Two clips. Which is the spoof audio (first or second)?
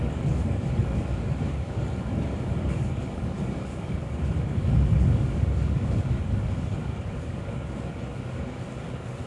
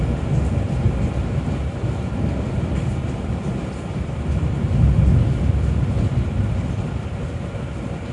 first